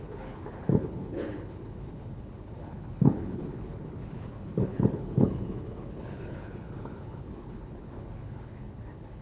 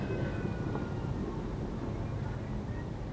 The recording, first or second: second